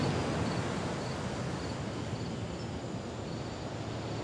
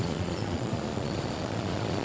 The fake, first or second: second